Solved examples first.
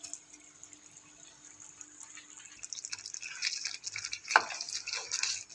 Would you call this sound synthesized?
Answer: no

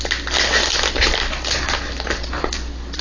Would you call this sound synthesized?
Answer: no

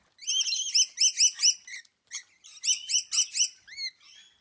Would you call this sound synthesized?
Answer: no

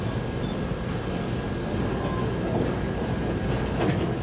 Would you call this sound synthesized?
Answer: no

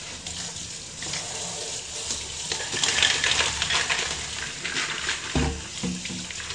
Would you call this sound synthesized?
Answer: no